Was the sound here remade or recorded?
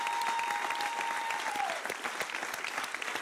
recorded